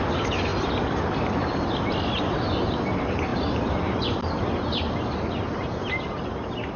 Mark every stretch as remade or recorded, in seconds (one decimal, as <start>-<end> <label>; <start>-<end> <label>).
0.0-3.3 recorded; 3.3-4.5 remade; 4.5-6.8 recorded